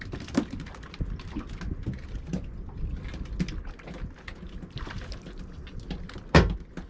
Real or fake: real